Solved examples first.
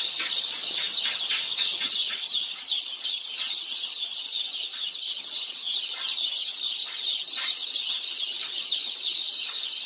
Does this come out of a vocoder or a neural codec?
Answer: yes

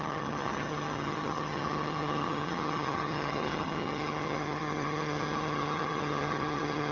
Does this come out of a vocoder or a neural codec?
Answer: yes